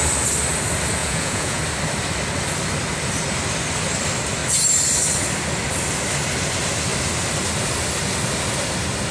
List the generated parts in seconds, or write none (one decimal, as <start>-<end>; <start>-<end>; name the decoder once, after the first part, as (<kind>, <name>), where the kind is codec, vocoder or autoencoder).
1.0-1.6 (vocoder, Vocos)